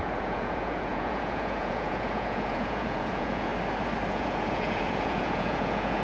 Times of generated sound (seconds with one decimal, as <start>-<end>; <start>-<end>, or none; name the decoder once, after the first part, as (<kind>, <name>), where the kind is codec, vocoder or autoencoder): 0.0-3.5 (vocoder, Vocos); 4.1-6.0